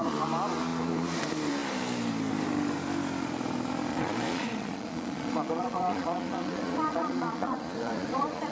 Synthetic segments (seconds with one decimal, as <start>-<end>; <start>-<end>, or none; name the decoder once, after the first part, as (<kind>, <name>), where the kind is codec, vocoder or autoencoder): 3.9-8.5 (vocoder, Vocos)

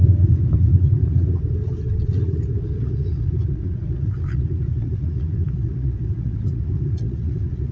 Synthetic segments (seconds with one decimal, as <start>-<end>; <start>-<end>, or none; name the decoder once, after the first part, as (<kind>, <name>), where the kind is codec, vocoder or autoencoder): 0.0-1.4 (vocoder, Vocos); 2.1-7.7

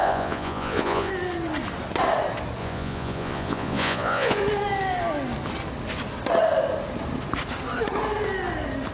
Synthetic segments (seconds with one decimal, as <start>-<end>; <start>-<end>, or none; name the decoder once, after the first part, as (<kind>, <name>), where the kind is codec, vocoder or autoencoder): 0.0-1.1 (vocoder, Vocos); 2.6-4.4

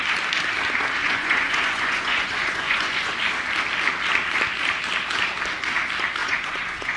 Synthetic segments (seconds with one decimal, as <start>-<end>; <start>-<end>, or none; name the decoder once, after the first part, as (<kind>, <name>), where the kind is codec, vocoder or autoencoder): 1.0-3.1 (vocoder, Vocos); 6.2-7.0

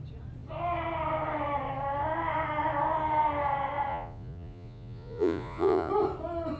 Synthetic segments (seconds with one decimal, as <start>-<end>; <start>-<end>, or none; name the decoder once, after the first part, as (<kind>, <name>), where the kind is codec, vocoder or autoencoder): 3.9-5.9 (vocoder, Vocos)

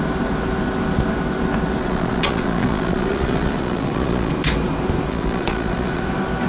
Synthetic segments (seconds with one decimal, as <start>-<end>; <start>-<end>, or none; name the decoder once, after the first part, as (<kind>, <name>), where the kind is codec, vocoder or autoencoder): 1.8-4.3 (vocoder, Vocos); 5.1-6.0